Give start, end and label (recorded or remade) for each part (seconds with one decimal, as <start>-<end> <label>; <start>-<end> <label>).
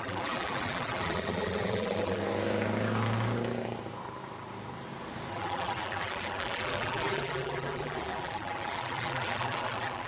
0.0-2.2 remade; 2.2-5.3 recorded; 5.3-10.1 remade